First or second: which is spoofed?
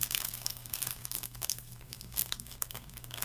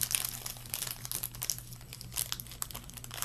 first